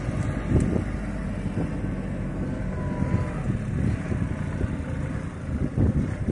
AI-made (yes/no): no